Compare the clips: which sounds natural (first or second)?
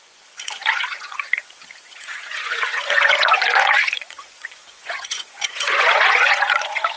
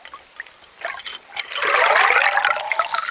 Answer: second